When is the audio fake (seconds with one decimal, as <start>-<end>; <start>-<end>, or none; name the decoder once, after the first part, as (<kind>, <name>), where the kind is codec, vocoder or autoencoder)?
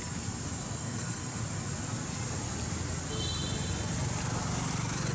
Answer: 0.8-1.4 (codec, SNAC)